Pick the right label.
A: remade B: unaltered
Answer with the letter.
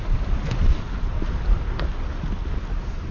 B